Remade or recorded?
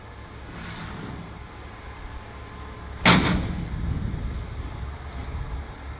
recorded